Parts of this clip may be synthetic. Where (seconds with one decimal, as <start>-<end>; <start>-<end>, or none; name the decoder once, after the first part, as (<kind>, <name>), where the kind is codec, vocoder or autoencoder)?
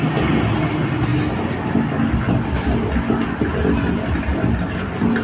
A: none